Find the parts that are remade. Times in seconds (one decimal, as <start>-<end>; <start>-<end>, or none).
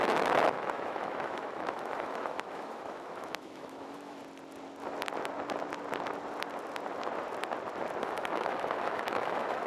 0.0-4.2; 8.0-9.7